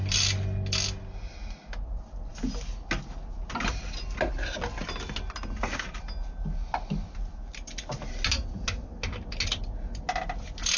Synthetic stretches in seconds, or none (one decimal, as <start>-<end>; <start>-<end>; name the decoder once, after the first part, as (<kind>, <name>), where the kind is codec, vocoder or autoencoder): none